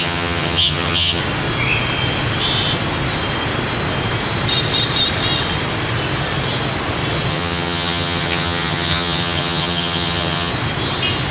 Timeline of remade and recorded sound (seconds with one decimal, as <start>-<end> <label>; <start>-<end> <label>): 0.0-1.2 remade; 1.2-7.3 recorded; 7.3-10.5 remade; 10.5-11.3 recorded